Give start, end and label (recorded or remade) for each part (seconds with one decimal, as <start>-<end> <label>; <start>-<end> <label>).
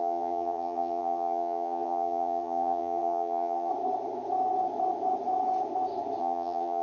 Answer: 0.0-3.7 remade; 3.7-6.2 recorded; 6.2-6.8 remade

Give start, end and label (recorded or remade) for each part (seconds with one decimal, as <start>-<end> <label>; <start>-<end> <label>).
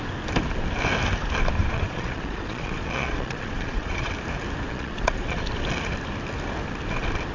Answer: 0.0-1.6 recorded; 1.6-4.1 remade; 4.1-4.7 recorded; 4.7-5.4 remade; 5.4-7.3 recorded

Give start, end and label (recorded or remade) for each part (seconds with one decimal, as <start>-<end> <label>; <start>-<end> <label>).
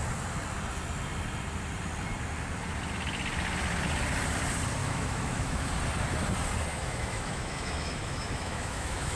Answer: 0.0-4.8 recorded; 4.8-5.7 remade; 5.7-6.7 recorded; 6.7-9.2 remade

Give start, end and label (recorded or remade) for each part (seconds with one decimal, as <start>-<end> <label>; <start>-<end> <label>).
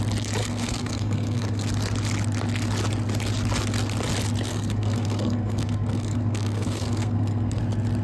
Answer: 0.0-0.4 recorded; 0.4-1.7 remade; 1.7-4.5 recorded; 4.5-7.6 remade; 7.6-8.0 recorded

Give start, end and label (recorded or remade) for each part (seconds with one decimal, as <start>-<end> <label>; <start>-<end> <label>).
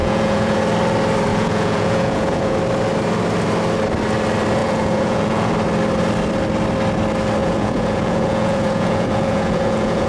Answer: 0.0-0.6 remade; 0.6-1.3 recorded; 1.3-2.6 remade; 2.6-4.6 recorded; 4.6-5.5 remade; 5.5-7.4 recorded; 7.4-10.1 remade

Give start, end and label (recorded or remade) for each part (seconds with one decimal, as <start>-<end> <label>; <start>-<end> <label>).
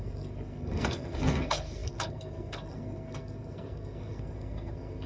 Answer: 0.0-5.1 remade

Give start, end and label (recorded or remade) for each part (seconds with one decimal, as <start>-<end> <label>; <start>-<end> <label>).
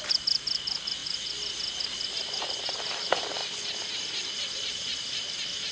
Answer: 0.0-5.7 recorded